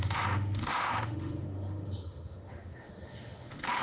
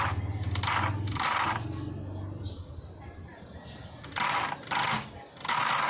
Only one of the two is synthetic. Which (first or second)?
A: first